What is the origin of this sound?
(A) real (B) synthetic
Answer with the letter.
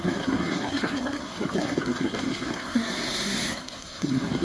B